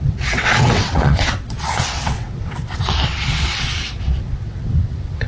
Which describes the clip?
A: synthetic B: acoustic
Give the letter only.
A